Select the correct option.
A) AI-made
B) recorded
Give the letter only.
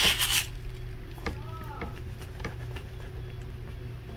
B